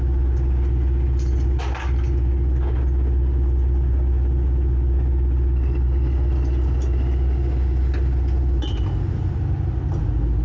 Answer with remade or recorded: recorded